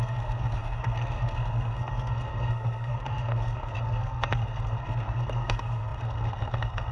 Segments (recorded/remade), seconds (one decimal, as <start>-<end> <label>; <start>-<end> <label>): 0.0-6.9 remade